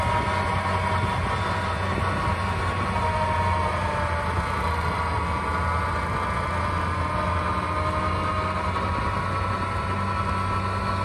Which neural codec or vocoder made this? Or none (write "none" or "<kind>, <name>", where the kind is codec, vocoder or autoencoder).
none